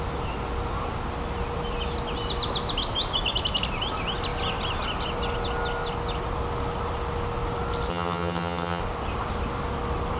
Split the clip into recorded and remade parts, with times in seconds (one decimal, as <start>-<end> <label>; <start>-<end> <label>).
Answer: 0.0-7.9 recorded; 7.9-8.8 remade; 8.8-10.2 recorded